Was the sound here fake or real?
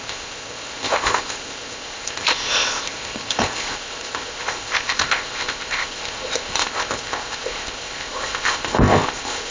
fake